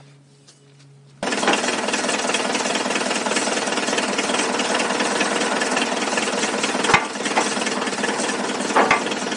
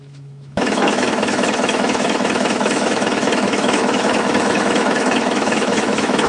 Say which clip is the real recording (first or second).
first